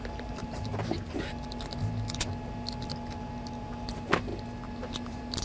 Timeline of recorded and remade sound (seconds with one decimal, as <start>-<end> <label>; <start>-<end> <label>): 0.0-0.7 remade; 0.7-3.9 recorded; 3.9-4.3 remade; 4.3-4.8 recorded; 4.8-5.4 remade